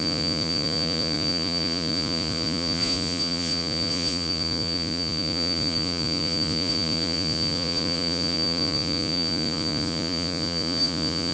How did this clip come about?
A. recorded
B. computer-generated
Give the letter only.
B